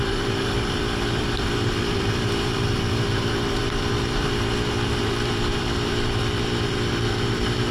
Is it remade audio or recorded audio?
remade